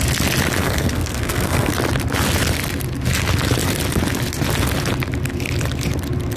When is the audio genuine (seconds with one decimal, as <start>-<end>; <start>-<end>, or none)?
0.0-0.6; 1.7-6.4

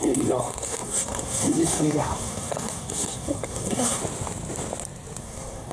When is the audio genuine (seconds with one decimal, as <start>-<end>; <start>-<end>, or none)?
4.0-5.2

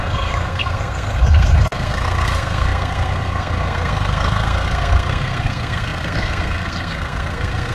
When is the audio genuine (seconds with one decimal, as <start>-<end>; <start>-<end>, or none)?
none

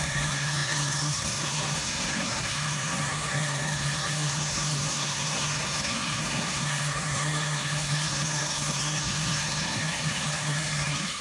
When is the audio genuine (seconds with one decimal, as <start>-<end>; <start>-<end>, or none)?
none

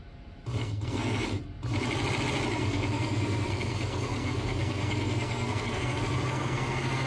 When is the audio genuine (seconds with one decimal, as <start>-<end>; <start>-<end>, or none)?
0.0-0.6; 1.4-2.6